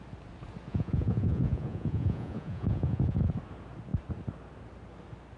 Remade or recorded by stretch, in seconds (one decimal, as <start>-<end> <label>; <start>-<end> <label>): 0.0-0.7 recorded; 0.7-3.3 remade; 3.3-5.4 recorded